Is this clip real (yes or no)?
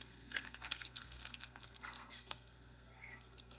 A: no